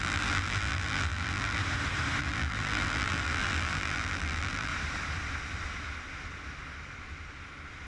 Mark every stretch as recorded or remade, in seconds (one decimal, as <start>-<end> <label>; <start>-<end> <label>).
0.0-1.6 remade; 1.6-2.2 recorded; 2.2-4.7 remade; 4.7-7.9 recorded